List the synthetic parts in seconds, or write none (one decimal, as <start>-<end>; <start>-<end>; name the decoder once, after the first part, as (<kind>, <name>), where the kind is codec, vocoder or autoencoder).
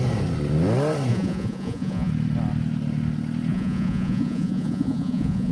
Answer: 1.1-2.1 (vocoder, Vocos); 3.5-5.5